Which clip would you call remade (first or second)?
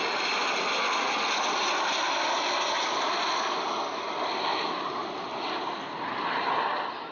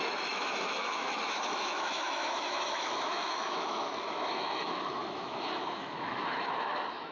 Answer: second